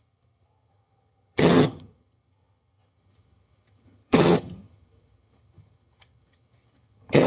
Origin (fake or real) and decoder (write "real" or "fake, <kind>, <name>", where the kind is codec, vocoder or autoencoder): fake, vocoder, HiFi-GAN